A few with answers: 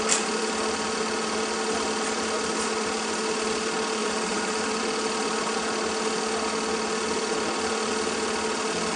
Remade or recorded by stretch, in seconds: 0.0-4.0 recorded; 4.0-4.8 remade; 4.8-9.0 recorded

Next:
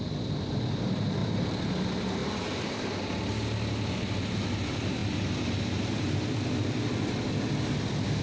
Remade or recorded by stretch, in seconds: 0.0-1.2 recorded; 1.2-1.7 remade; 1.7-8.2 recorded

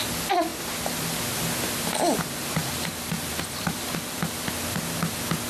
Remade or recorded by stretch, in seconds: 0.0-2.6 recorded; 2.6-4.5 remade; 4.5-5.5 recorded

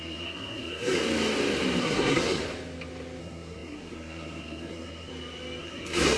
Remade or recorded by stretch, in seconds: 0.0-1.0 remade; 1.0-1.8 recorded; 1.8-2.4 remade; 2.4-3.2 recorded; 3.2-5.1 remade; 5.1-5.6 recorded; 5.6-6.2 remade

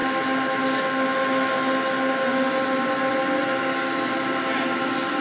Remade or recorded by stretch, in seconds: 0.0-5.2 recorded

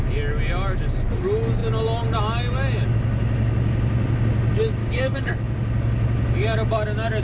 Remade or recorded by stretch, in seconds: 0.0-4.8 recorded; 4.8-5.3 remade; 5.3-7.2 recorded

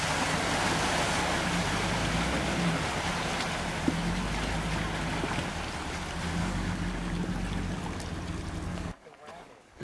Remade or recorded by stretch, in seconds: 0.0-6.4 recorded; 6.4-7.3 remade; 7.3-8.7 recorded; 8.7-9.8 remade

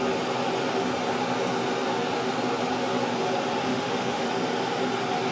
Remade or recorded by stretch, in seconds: 0.0-3.7 recorded; 3.7-4.3 remade; 4.3-5.3 recorded